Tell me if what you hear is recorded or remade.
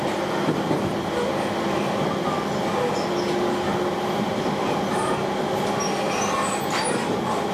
recorded